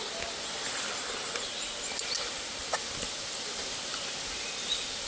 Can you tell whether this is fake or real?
real